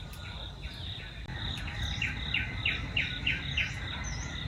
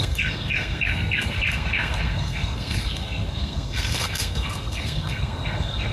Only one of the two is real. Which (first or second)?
first